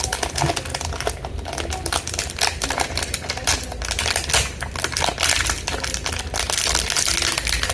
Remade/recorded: recorded